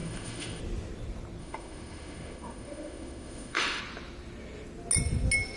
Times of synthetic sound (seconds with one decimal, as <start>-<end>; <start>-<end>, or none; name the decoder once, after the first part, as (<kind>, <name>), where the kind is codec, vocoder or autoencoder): 0.0-0.6 (autoencoder, DAC-VAE); 1.4-3.8